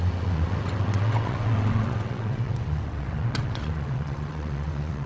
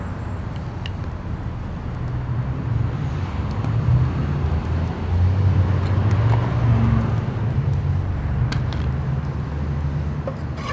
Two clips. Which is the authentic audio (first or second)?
second